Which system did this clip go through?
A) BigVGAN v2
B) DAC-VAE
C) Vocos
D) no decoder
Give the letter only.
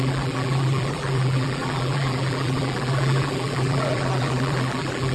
A